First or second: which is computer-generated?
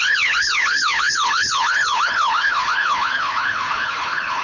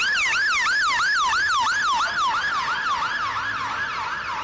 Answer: first